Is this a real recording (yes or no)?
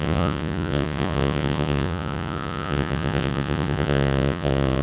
no